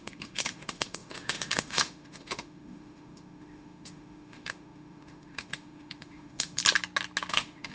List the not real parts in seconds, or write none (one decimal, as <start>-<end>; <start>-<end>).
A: 0.0-6.6; 7.3-7.7